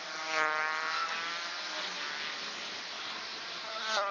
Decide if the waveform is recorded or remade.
recorded